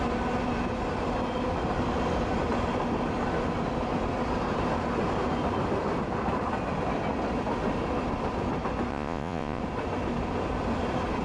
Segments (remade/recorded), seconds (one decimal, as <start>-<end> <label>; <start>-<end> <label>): 0.0-8.9 recorded; 8.9-9.6 remade; 9.6-11.2 recorded